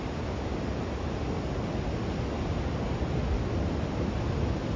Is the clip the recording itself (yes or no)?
yes